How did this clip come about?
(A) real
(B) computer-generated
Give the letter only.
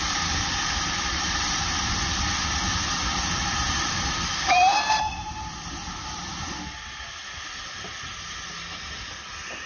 A